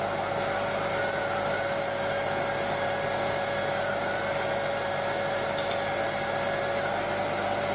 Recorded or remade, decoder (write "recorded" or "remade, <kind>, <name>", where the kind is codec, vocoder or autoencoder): recorded